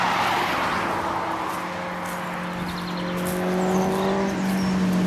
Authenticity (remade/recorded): recorded